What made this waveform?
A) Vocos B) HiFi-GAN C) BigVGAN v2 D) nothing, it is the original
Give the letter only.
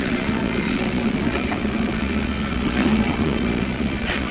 A